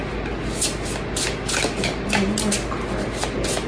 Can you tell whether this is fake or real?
real